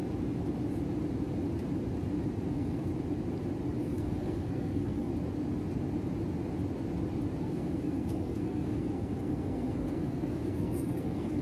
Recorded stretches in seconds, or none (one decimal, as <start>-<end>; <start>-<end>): 0.0-2.5; 2.9-3.8; 5.1-7.4